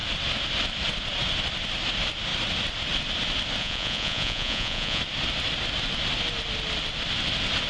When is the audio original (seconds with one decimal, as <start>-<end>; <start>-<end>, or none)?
0.0-3.6; 5.0-7.7

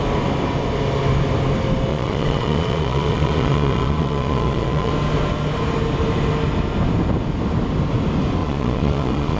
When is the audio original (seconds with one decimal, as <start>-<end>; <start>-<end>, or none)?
0.0-1.9; 4.9-8.4

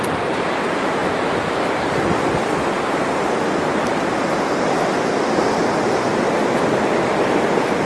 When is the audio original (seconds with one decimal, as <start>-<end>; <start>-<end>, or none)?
0.0-7.9

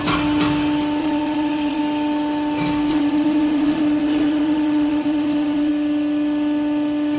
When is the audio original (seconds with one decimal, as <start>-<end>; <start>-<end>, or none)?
0.0-1.0; 1.8-2.9; 5.7-7.2